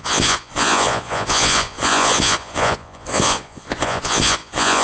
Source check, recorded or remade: remade